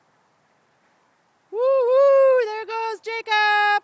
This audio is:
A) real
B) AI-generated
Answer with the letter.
A